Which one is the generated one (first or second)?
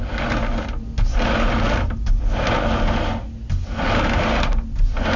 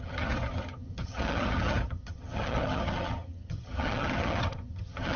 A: second